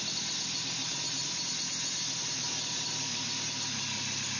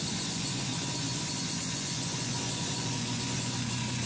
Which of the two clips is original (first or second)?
first